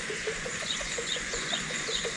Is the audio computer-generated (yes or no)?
yes